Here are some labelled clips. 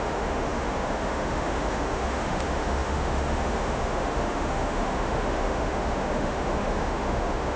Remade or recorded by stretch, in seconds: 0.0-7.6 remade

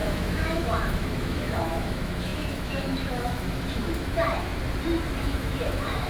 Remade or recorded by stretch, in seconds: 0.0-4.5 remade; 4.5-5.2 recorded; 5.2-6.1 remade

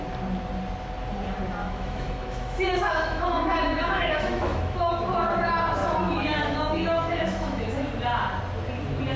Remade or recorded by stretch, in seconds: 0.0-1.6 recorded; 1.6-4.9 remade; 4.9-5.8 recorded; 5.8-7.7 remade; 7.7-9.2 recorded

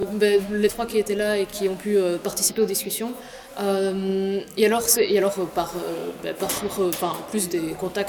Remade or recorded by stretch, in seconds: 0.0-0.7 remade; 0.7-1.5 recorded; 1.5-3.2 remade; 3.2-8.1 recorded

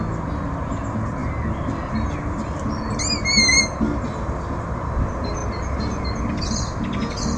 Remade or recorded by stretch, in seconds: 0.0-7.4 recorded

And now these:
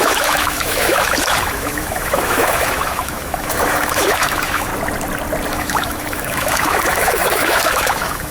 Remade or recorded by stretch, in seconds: 0.0-4.7 remade; 4.7-5.5 recorded; 5.5-8.3 remade

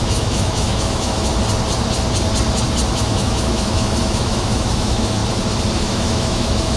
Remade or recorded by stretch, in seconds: 0.0-1.3 remade; 1.3-2.9 recorded; 2.9-5.2 remade; 5.2-5.8 recorded; 5.8-6.8 remade